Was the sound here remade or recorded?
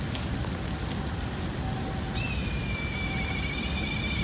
recorded